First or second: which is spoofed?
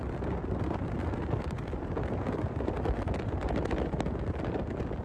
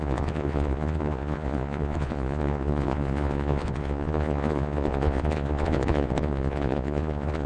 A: second